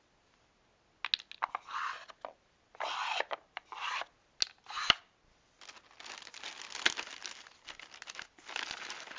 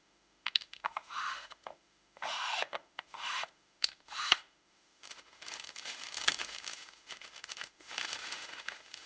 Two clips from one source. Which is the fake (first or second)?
second